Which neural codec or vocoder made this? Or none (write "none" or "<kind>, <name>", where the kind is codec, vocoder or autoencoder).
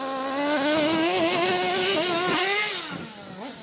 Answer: none